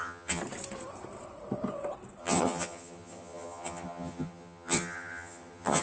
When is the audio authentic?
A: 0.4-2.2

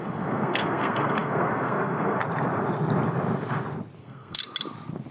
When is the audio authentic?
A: 2.2-4.0; 4.4-5.1

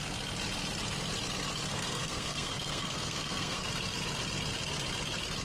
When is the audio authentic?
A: 0.0-1.7; 3.7-5.4

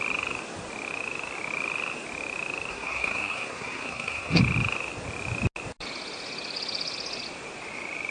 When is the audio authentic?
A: 0.0-2.7; 4.4-8.1

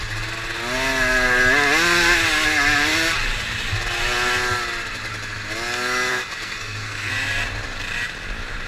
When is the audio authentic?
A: 0.0-6.1; 7.1-8.7